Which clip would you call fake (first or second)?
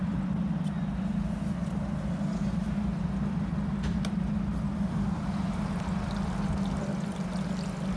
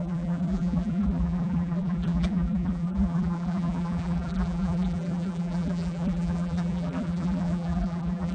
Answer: second